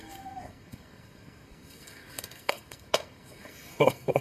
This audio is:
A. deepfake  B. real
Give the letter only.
A